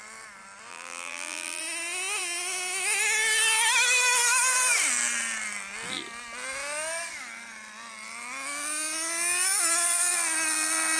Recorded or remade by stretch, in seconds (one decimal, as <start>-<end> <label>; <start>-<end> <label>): 0.0-0.7 recorded; 0.7-1.6 remade; 1.6-11.0 recorded